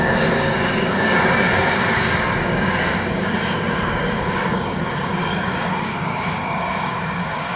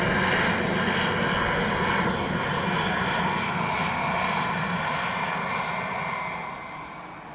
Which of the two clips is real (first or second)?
second